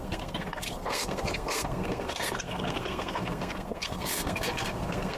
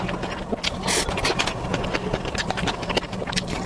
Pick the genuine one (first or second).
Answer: second